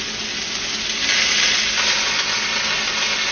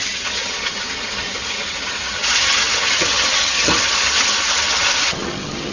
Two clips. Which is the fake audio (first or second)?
second